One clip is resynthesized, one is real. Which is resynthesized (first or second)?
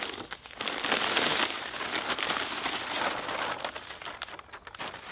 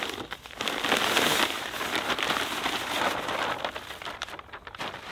second